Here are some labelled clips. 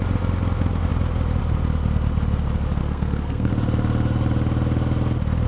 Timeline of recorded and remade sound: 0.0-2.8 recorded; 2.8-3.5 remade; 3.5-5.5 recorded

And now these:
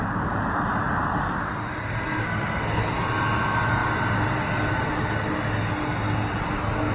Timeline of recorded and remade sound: 0.0-2.2 recorded; 2.2-2.8 remade; 2.8-6.9 recorded

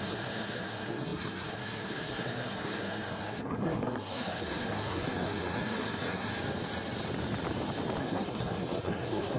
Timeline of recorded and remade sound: 0.0-6.3 remade; 6.3-8.0 recorded; 8.0-9.4 remade

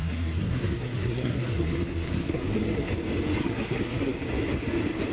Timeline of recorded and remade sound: 0.0-2.9 remade; 2.9-3.4 recorded; 3.4-4.2 remade; 4.2-5.1 recorded

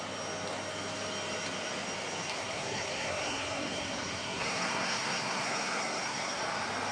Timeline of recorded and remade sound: 0.0-2.3 recorded; 2.3-6.4 remade; 6.4-6.9 recorded

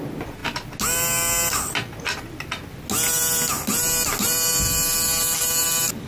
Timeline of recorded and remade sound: 0.0-6.1 recorded

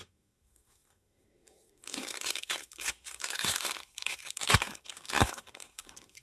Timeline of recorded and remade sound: 0.0-6.2 remade

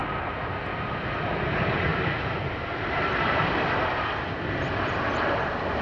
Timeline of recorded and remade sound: 0.0-5.8 recorded